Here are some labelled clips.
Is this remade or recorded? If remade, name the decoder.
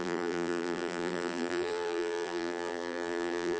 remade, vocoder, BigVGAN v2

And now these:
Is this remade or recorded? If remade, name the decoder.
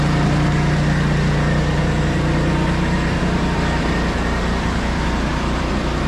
remade, vocoder, BigVGAN v2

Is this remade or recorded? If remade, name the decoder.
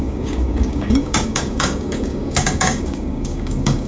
remade, codec, DAC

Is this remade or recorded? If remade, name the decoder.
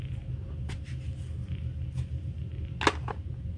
recorded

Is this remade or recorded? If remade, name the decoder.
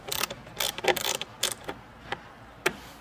recorded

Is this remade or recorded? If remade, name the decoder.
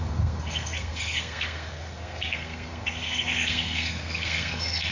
remade, codec, SNAC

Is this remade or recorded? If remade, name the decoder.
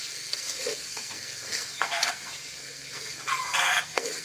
remade, codec, SNAC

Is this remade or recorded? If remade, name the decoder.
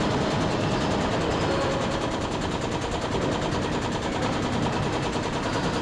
recorded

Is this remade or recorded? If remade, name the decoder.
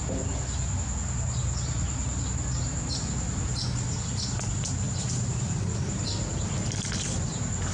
recorded